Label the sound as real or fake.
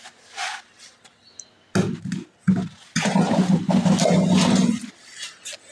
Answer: real